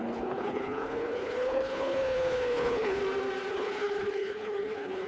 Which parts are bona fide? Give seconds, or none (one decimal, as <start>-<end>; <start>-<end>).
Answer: 3.0-3.5